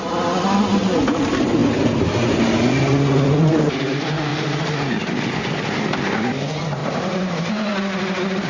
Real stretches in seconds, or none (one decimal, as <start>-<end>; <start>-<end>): 0.0-8.5